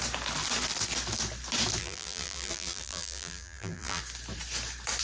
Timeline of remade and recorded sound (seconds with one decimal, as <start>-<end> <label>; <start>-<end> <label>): 0.0-1.8 recorded; 1.8-4.0 remade; 4.0-5.0 recorded